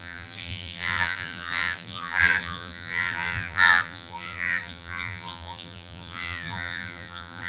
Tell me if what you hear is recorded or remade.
remade